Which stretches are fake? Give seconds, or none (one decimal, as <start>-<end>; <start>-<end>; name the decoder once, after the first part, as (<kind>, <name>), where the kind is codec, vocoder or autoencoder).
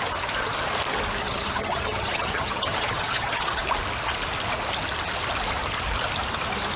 1.2-3.6 (vocoder, HiFi-GAN)